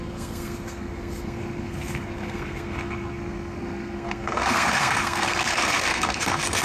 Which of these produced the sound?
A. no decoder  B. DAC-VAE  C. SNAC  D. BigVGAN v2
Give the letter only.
C